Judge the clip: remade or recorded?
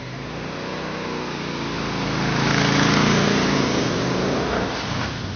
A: recorded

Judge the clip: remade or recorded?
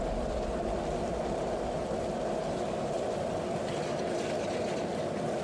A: recorded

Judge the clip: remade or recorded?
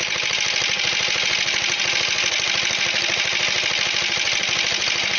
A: recorded